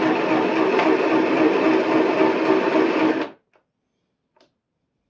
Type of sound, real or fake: real